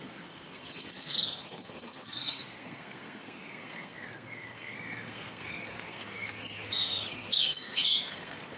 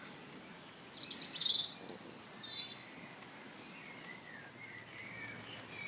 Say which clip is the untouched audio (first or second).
second